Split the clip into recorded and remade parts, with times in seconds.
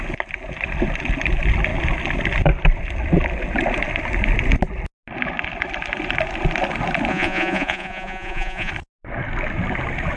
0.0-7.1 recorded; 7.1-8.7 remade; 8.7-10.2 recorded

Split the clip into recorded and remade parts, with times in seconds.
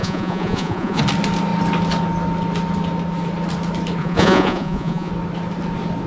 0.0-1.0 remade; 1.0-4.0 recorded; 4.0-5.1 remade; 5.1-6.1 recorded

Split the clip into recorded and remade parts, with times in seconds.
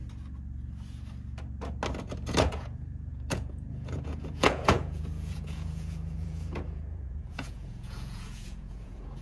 0.0-2.4 recorded; 2.4-9.2 remade